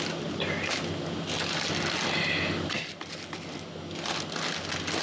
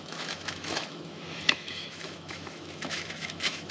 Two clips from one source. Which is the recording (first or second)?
first